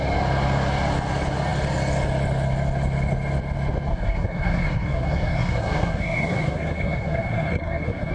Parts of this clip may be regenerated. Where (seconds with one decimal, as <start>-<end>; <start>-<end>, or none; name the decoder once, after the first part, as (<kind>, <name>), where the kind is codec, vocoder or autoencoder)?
3.9-8.1 (codec, SNAC)